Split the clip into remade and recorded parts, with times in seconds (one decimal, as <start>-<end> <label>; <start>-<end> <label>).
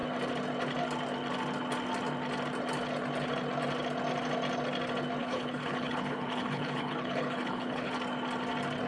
0.0-5.2 recorded; 5.2-7.9 remade; 7.9-8.9 recorded